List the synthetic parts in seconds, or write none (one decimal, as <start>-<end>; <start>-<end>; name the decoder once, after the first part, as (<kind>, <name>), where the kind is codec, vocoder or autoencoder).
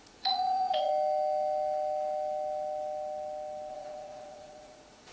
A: 0.0-0.9 (vocoder, Vocos); 3.7-5.1